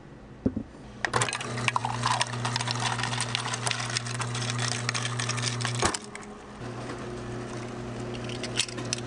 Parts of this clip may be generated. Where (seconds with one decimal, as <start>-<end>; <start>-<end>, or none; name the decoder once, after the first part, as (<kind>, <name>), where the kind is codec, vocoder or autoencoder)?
none